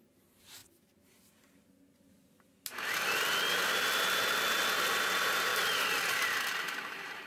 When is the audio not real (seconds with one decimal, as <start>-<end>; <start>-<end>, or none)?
0.0-0.6; 4.9-5.5; 6.1-7.3